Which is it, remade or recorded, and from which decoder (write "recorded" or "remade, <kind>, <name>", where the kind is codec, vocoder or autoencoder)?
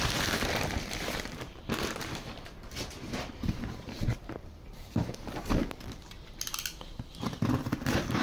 remade, vocoder, BigVGAN v2